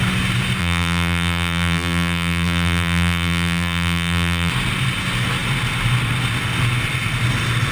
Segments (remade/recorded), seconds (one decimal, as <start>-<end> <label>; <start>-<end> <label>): 0.0-0.6 recorded; 0.6-4.5 remade; 4.5-7.7 recorded

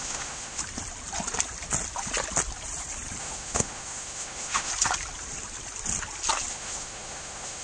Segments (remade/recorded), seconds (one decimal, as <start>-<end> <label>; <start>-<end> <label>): 0.0-0.6 remade; 0.6-3.2 recorded; 3.2-4.7 remade; 4.7-6.5 recorded; 6.5-7.6 remade